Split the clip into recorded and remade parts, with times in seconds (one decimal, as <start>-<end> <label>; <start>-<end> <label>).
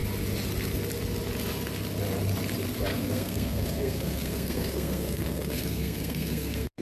0.0-2.9 recorded; 2.9-6.8 remade